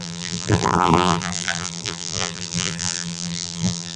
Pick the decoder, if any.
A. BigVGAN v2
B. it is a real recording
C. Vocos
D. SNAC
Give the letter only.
A